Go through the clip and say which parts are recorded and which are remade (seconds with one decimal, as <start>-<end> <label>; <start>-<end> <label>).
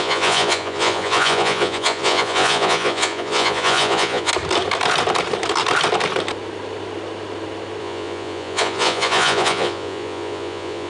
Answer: 0.0-4.3 remade; 4.3-7.8 recorded; 7.8-10.9 remade